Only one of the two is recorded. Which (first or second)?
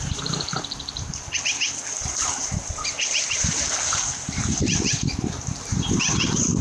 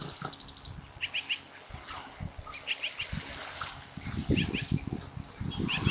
second